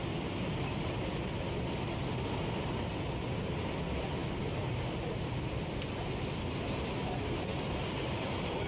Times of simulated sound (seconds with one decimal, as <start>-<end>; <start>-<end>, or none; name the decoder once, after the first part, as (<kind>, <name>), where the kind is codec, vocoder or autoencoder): 7.5-8.7 (vocoder, BigVGAN v2)